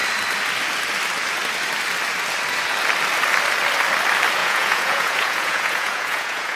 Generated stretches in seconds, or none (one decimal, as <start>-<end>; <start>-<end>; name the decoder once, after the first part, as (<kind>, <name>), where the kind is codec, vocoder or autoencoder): 4.4-6.6 (vocoder, Vocos)